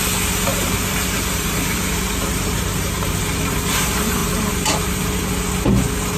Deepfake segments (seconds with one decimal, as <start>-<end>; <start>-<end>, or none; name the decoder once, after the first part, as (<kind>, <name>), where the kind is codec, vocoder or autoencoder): 0.5-3.2 (vocoder, BigVGAN v2); 4.2-5.3